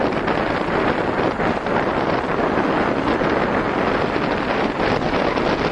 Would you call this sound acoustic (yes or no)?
yes